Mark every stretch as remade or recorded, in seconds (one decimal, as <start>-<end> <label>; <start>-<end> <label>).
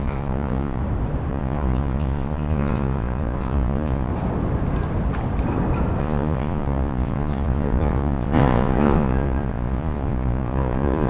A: 0.0-0.8 remade; 0.8-1.3 recorded; 1.3-4.1 remade; 4.1-6.0 recorded; 6.0-11.1 remade